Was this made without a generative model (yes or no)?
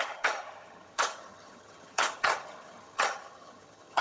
no